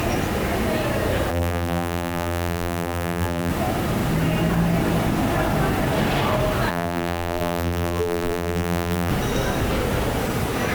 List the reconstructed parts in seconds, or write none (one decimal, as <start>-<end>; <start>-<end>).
1.3-3.5; 6.7-9.1